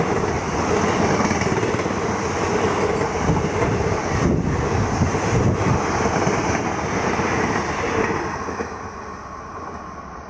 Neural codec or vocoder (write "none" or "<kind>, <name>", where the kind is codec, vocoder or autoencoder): none